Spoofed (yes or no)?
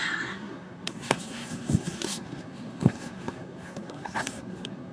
yes